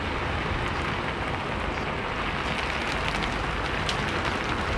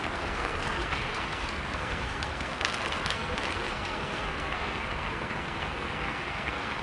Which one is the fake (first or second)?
second